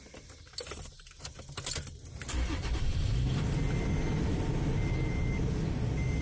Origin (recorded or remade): recorded